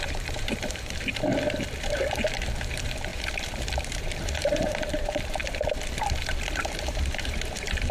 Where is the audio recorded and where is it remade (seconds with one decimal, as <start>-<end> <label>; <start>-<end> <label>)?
0.0-1.3 remade; 1.3-1.8 recorded; 1.8-5.4 remade; 5.4-6.8 recorded; 6.8-7.9 remade